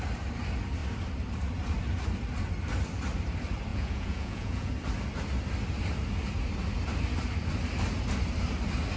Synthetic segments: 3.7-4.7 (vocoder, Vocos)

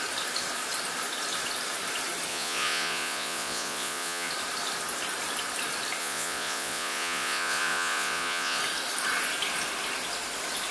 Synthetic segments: 2.3-4.3 (vocoder, Vocos); 6.0-8.6

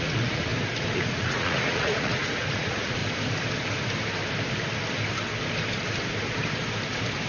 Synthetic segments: 0.0-0.5 (vocoder, Vocos); 1.0-3.0

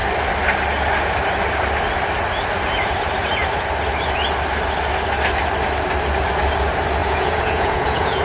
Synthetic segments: 7.0-8.2 (vocoder, Vocos)

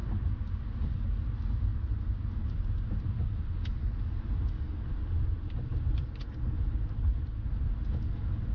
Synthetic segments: none

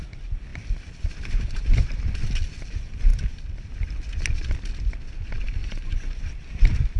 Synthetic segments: 5.6-6.2 (vocoder, Vocos)